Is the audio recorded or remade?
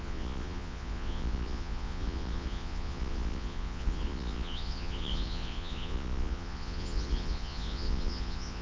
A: remade